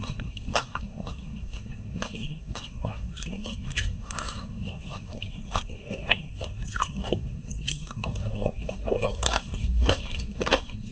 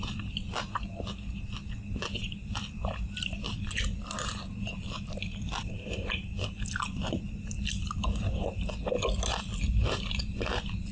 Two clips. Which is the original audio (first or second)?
second